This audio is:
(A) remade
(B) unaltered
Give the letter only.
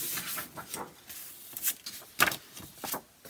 B